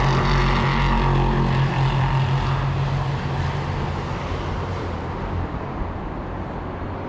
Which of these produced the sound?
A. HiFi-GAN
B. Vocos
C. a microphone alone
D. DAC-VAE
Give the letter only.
C